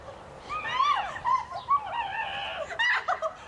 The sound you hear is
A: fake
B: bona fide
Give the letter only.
B